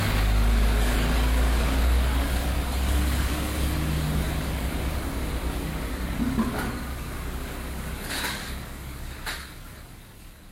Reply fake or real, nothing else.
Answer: fake